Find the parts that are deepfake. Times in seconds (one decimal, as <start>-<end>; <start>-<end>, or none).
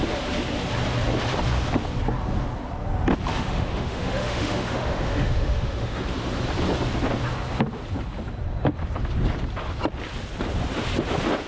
3.3-6.0